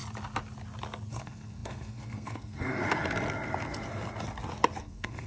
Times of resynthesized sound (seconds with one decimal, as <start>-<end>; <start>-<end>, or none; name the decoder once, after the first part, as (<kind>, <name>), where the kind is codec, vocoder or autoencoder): 1.1-2.8 (codec, SNAC); 4.8-5.3